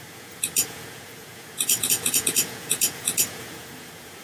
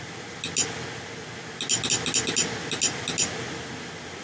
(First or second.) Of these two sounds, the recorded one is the second